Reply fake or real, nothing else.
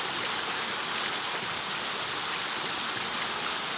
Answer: real